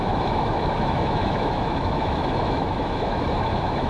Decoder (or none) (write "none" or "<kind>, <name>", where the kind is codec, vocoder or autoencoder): autoencoder, DAC-VAE